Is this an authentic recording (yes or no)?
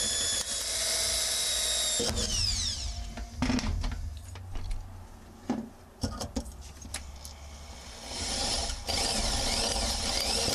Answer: yes